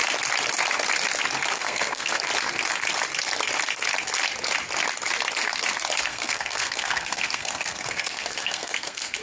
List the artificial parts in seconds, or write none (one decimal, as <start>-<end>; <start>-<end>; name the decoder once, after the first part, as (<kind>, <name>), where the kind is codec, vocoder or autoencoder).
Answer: 1.5-2.2 (codec, SNAC); 6.1-9.2